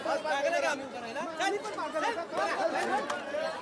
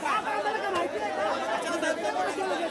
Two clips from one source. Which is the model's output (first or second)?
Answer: second